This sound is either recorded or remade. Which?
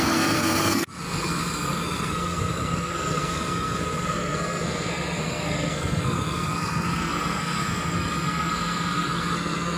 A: remade